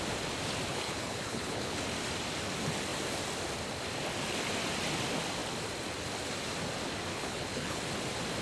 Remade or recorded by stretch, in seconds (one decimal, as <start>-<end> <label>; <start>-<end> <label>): 0.0-0.7 recorded; 0.7-1.8 remade; 1.8-7.1 recorded; 7.1-7.8 remade; 7.8-8.4 recorded